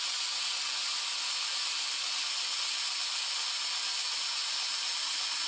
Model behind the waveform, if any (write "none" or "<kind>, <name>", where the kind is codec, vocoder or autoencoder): none